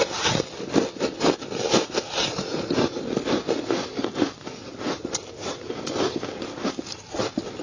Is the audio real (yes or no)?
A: yes